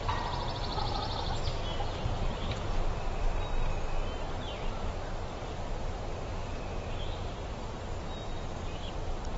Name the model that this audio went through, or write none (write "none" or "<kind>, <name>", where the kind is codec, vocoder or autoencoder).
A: none